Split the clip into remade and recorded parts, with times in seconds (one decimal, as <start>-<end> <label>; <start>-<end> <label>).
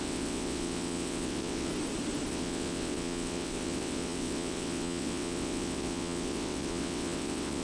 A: 0.0-1.7 remade; 1.7-2.3 recorded; 2.3-7.6 remade